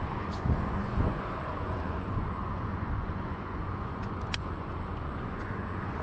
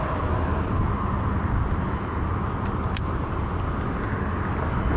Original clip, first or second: second